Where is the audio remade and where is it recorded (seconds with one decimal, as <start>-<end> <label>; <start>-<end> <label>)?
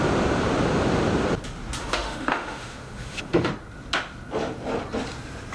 0.0-1.8 recorded; 1.8-3.5 remade; 3.5-5.5 recorded